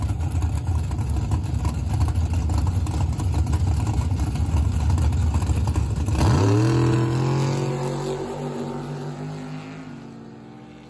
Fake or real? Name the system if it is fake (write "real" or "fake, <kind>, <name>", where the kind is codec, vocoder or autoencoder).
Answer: real